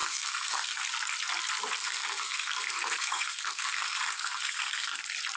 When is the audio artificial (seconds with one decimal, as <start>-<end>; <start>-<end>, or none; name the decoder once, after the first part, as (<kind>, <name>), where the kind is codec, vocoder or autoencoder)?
0.0-0.8 (codec, SNAC); 1.8-5.0